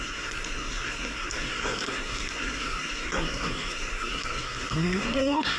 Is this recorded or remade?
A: remade